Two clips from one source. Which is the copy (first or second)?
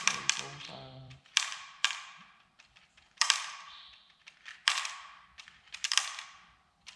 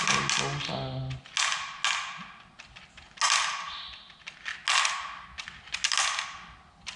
first